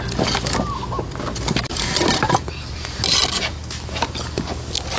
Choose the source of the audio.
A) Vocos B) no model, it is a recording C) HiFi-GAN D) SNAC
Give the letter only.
B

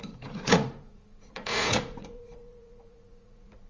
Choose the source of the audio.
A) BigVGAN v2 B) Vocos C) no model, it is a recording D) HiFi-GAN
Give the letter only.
B